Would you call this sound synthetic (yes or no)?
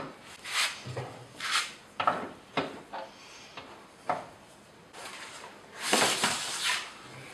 no